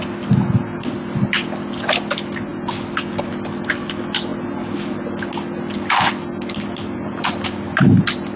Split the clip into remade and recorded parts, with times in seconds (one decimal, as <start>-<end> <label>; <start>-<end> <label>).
0.0-8.4 recorded